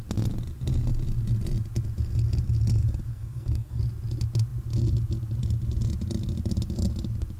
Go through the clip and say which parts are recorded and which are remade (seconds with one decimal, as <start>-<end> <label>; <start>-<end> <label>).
0.0-3.1 recorded; 3.1-3.8 remade; 3.8-7.4 recorded